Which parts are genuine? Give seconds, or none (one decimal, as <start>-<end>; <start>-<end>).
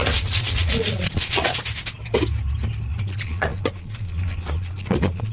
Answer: 1.6-3.0